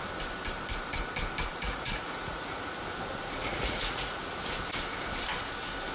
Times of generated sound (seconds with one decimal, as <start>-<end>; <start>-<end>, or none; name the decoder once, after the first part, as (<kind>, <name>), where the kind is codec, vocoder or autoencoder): 1.5-2.8 (vocoder, Vocos); 3.2-4.2